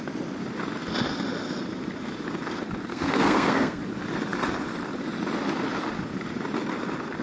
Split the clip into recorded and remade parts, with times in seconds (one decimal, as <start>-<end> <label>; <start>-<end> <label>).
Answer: 0.0-2.9 recorded; 2.9-3.8 remade; 3.8-7.2 recorded